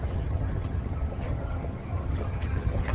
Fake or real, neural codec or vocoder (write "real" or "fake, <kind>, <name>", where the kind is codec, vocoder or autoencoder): fake, vocoder, HiFi-GAN